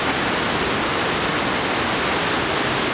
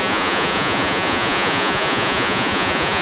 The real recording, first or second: first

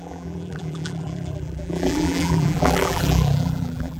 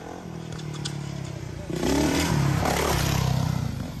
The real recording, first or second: second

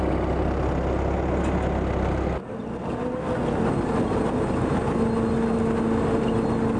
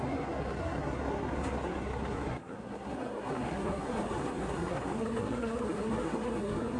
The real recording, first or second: first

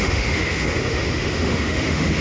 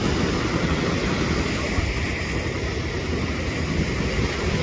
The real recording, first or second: second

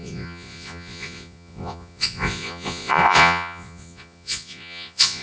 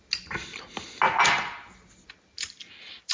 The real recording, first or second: second